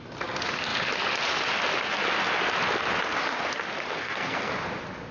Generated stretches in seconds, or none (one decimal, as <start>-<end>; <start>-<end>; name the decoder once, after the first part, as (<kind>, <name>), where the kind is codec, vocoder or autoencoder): 3.9-4.5 (codec, SNAC)